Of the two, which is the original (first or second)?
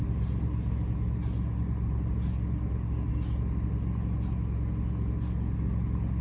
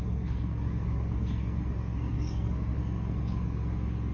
first